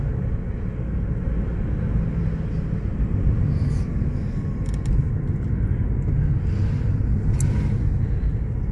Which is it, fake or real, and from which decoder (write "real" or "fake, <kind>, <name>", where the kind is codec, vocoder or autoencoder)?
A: real